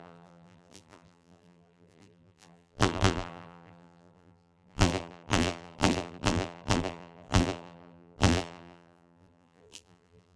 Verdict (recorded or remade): remade